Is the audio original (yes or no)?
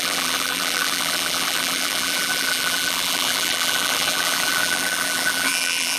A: no